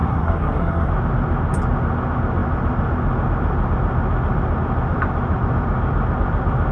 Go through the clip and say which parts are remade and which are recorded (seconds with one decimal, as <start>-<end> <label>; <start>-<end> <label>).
0.0-0.9 remade; 0.9-6.7 recorded